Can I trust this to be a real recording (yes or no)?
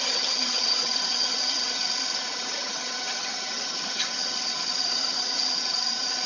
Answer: no